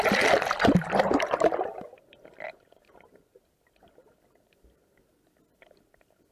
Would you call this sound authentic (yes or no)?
yes